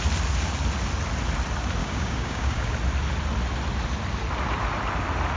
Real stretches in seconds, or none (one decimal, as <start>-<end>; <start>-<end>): 0.0-1.8; 2.7-5.4